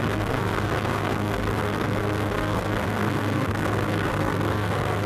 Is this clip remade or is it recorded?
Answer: remade